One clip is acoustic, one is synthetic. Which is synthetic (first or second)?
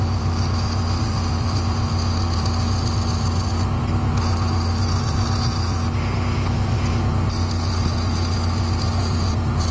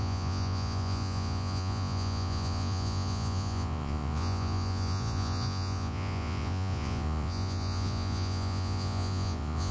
second